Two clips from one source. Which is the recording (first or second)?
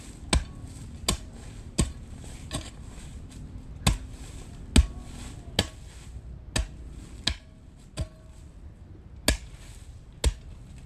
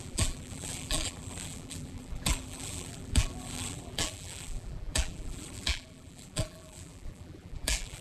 first